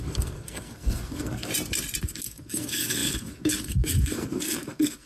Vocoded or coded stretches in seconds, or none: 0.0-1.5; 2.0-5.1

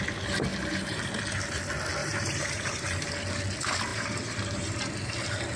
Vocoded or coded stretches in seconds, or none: 0.5-1.2; 2.0-3.1; 3.9-4.9

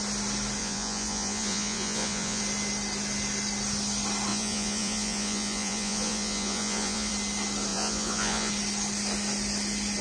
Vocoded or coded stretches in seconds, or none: 0.6-2.4; 4.3-7.1; 7.7-8.5